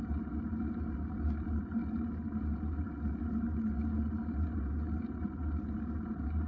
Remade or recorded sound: remade